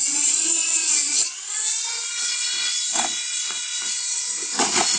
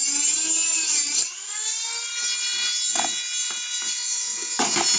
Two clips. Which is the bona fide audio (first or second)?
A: second